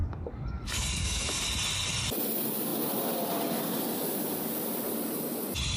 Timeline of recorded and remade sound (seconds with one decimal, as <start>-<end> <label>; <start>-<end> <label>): 0.0-1.4 remade; 1.4-5.8 recorded